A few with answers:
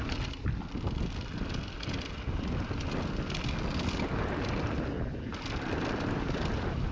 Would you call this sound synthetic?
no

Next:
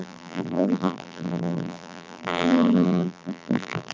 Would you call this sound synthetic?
yes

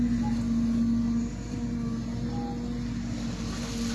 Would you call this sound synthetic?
no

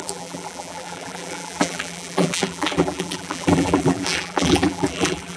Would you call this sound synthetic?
yes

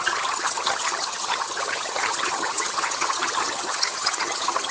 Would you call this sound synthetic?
yes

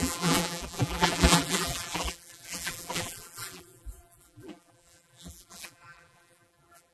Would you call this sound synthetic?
yes